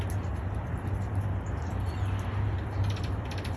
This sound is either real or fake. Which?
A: real